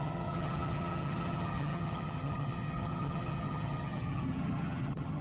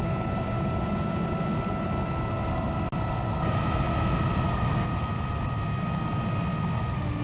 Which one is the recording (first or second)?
second